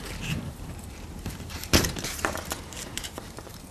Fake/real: fake